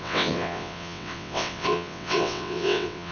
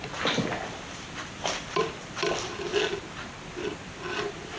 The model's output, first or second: first